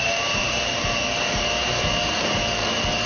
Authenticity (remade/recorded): remade